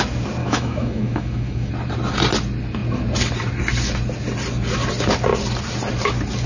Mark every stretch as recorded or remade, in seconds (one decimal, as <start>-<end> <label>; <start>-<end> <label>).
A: 0.0-0.4 recorded; 0.4-1.7 remade; 1.7-6.5 recorded